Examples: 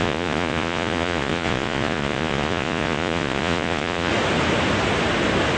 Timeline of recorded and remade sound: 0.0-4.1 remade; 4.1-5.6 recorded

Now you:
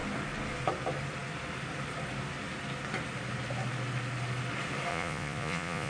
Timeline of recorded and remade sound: 0.0-4.9 recorded; 4.9-5.9 remade

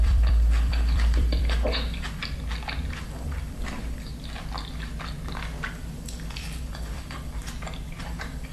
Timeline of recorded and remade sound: 0.0-2.2 remade; 2.2-3.0 recorded; 3.0-4.1 remade; 4.1-5.7 recorded; 5.7-7.4 remade; 7.4-8.0 recorded; 8.0-8.5 remade

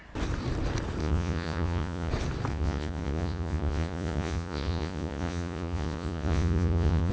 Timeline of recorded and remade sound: 0.0-1.0 recorded; 1.0-2.1 remade; 2.1-2.5 recorded; 2.5-7.1 remade

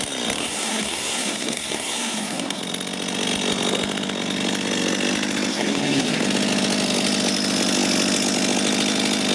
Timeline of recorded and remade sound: 0.0-0.4 recorded; 0.4-2.6 remade; 2.6-5.5 recorded; 5.5-6.2 remade; 6.2-9.3 recorded

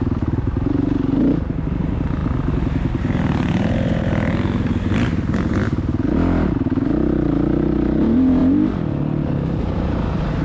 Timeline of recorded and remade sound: 0.0-10.4 recorded

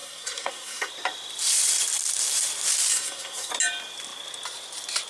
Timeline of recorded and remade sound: 0.0-0.9 remade; 0.9-2.9 recorded; 2.9-3.5 remade; 3.5-5.1 recorded